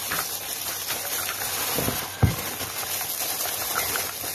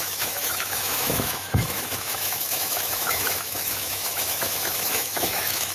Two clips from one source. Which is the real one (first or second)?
first